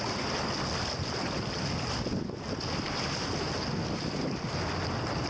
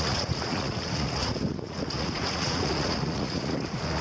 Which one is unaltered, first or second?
first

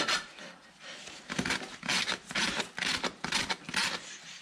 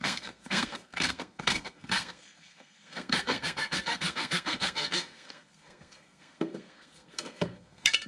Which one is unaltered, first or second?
first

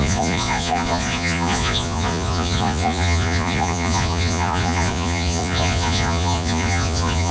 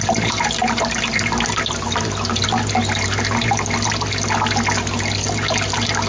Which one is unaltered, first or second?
second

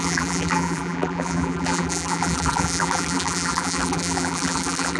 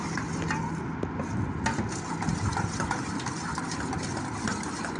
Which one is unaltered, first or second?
second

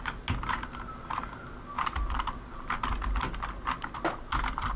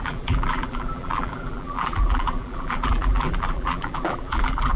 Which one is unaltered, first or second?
first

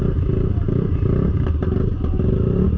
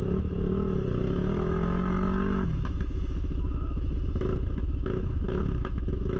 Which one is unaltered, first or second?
first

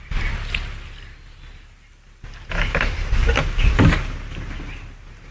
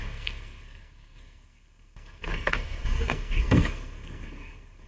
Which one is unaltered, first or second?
first